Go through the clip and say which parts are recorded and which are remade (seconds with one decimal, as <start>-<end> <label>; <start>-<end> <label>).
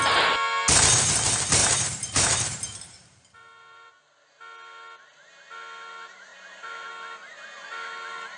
0.0-1.6 recorded; 1.6-4.0 remade; 4.0-6.3 recorded; 6.3-6.9 remade; 6.9-8.4 recorded